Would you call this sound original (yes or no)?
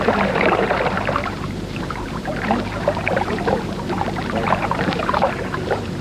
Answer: no